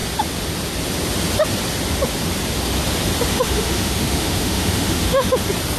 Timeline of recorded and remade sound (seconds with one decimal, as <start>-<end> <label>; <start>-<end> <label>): 0.0-3.3 recorded; 3.3-5.3 remade; 5.3-5.8 recorded